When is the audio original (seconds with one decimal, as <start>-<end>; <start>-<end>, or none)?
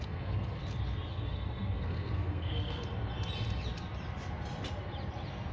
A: 0.6-1.1; 2.8-5.5